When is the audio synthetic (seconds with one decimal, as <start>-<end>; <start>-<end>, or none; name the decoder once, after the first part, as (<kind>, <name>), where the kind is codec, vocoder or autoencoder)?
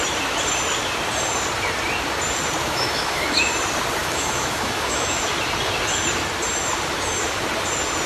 2.6-3.5 (autoencoder, DAC-VAE); 4.0-5.3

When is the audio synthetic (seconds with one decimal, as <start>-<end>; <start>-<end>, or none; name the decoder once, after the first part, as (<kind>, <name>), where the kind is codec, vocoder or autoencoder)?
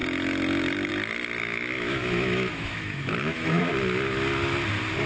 1.4-3.6 (autoencoder, DAC-VAE)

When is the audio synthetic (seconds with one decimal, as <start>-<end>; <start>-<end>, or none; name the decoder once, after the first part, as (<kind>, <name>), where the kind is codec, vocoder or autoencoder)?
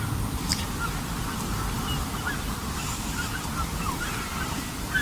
none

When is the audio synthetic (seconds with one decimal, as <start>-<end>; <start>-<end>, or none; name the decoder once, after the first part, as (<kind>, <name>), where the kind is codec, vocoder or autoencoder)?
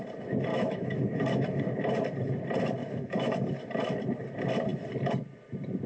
0.5-1.6 (autoencoder, DAC-VAE); 2.8-3.5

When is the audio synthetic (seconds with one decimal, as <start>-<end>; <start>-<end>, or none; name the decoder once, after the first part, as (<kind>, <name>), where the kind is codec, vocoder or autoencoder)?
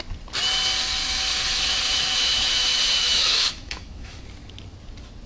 1.0-4.2 (autoencoder, DAC-VAE)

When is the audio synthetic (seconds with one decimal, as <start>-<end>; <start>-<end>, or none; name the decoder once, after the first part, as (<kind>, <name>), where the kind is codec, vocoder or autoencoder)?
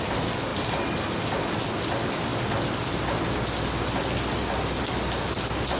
none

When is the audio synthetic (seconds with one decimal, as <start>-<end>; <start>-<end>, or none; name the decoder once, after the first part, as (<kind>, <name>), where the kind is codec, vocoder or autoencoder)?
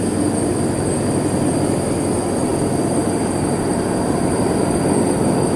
none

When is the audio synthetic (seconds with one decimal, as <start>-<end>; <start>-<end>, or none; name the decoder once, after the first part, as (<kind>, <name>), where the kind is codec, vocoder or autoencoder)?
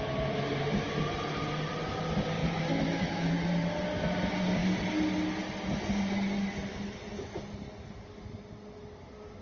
2.4-3.3 (autoencoder, DAC-VAE)